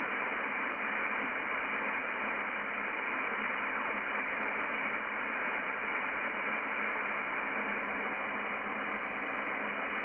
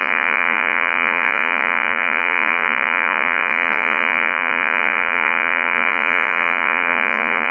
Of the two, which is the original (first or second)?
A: first